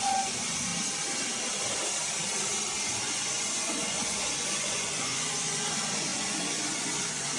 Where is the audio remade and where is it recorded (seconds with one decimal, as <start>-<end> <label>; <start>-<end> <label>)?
0.0-0.7 remade; 0.7-2.9 recorded; 2.9-7.4 remade